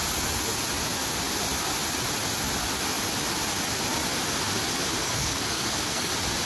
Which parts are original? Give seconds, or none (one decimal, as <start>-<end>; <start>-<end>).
0.0-5.0; 6.1-6.5